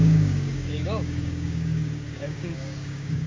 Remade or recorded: remade